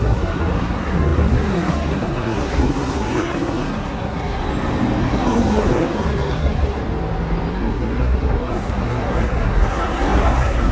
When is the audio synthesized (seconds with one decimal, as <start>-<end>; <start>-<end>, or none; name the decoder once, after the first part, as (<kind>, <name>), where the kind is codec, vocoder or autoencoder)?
0.0-4.4 (codec, SNAC); 5.0-6.8; 7.5-10.7